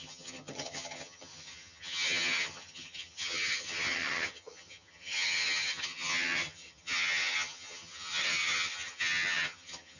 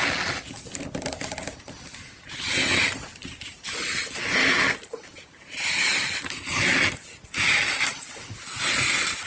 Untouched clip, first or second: second